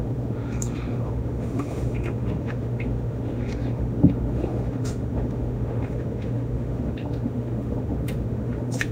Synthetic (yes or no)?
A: yes